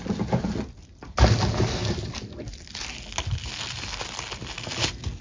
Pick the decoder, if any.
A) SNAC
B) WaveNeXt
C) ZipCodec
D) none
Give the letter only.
D